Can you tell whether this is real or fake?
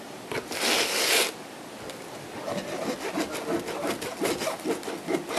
real